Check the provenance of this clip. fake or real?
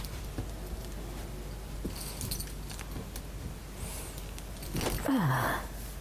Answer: real